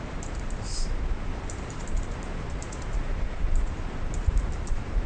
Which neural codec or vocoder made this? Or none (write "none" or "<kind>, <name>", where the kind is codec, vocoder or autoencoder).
vocoder, BigVGAN v2